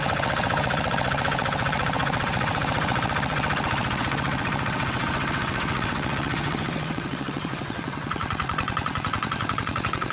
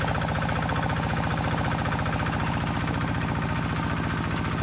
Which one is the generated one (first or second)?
first